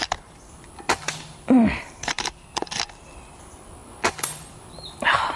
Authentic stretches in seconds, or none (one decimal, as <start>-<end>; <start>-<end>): none